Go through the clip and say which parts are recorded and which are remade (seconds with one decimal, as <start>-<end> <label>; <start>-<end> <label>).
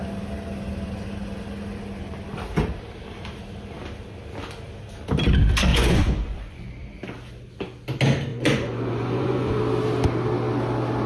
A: 0.0-5.7 recorded; 5.7-6.7 remade; 6.7-8.3 recorded; 8.3-9.6 remade; 9.6-11.1 recorded